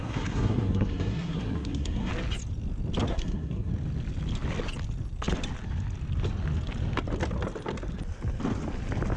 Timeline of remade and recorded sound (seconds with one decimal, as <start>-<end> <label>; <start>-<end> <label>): 0.0-2.1 remade; 2.1-3.1 recorded; 3.1-3.7 remade; 3.7-9.2 recorded